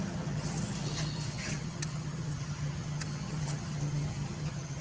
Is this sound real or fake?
fake